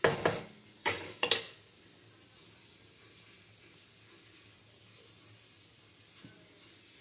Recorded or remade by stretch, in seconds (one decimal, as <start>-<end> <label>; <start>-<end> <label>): 0.0-0.8 recorded; 0.8-1.3 remade; 1.3-7.0 recorded

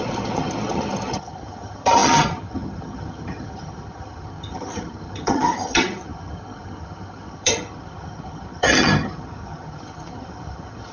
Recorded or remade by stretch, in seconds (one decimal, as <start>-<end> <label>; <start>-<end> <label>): 0.0-10.9 remade

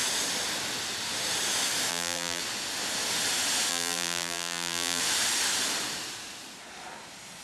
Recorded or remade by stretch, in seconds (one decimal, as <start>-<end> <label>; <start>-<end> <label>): 0.0-1.9 recorded; 1.9-2.4 remade; 2.4-3.7 recorded; 3.7-5.0 remade; 5.0-7.4 recorded

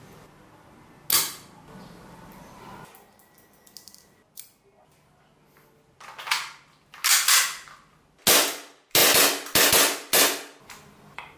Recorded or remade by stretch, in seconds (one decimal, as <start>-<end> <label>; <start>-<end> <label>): 0.0-11.4 recorded

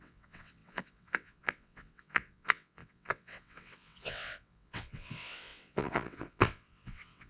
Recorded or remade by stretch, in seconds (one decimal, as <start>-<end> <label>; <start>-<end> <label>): 0.0-7.3 remade